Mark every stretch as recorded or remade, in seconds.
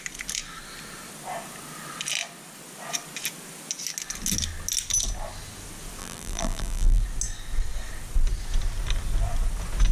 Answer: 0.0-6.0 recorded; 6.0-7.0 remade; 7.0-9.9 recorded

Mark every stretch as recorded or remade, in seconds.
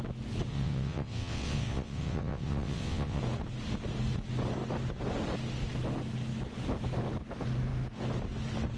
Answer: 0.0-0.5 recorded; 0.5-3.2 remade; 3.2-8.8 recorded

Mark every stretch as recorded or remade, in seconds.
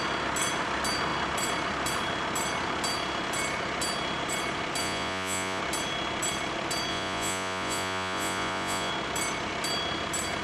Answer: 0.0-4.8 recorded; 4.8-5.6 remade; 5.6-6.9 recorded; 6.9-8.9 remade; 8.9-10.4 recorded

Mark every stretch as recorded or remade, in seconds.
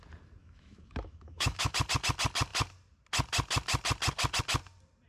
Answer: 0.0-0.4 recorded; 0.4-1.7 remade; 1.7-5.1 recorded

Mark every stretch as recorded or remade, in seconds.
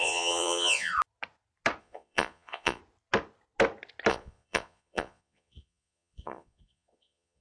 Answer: 0.0-0.9 remade; 0.9-1.8 recorded; 1.8-2.8 remade; 2.8-4.1 recorded; 4.1-7.4 remade